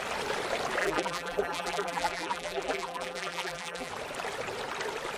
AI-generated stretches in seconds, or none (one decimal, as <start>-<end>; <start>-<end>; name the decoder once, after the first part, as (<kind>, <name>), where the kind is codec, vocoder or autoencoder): 0.8-3.9 (vocoder, BigVGAN v2)